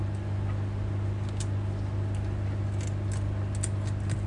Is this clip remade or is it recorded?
recorded